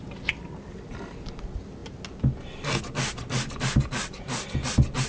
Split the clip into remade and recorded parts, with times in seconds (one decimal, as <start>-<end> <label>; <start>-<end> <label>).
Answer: 0.0-5.1 recorded